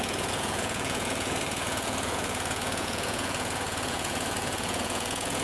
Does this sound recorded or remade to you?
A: remade